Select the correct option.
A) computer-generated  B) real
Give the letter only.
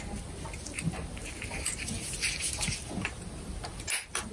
B